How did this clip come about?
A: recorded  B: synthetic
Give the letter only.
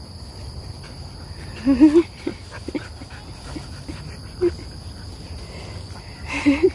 A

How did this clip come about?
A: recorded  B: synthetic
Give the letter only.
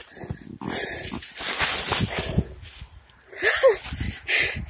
A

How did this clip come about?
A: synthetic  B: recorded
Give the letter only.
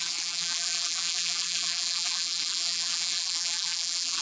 A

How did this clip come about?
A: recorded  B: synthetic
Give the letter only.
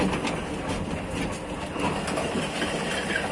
A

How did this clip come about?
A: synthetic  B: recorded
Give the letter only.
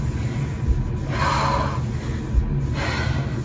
B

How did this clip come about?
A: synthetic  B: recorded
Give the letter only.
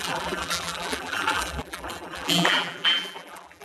A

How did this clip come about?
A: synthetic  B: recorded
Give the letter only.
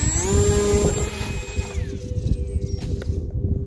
B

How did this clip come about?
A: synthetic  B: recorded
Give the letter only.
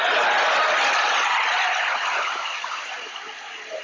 B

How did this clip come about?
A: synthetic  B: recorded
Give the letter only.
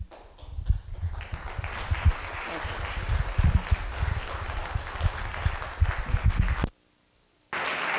B